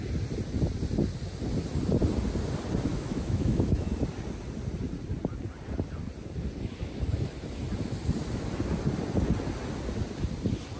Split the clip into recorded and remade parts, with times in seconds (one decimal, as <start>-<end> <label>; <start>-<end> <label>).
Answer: 0.0-2.9 recorded; 2.9-3.9 remade; 3.9-10.8 recorded